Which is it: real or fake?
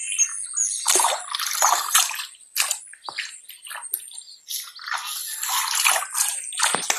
real